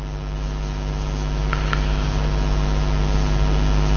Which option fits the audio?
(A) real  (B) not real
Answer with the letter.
A